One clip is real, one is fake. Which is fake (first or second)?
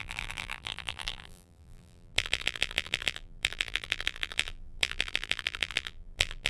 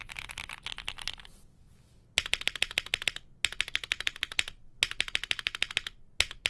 first